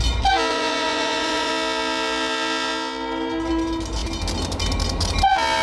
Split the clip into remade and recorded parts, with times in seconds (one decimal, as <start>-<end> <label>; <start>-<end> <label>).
0.0-0.5 recorded; 0.5-1.5 remade; 1.5-5.6 recorded